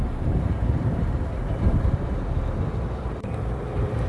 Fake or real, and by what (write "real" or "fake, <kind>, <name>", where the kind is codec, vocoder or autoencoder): fake, vocoder, BigVGAN v2